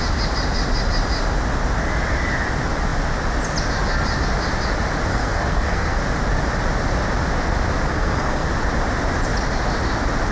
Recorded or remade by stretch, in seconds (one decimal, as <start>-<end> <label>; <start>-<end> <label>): 0.0-5.1 recorded; 5.1-6.0 remade; 6.0-7.9 recorded; 7.9-8.5 remade; 8.5-10.3 recorded